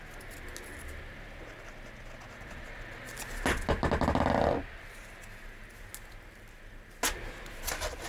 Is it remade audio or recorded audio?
recorded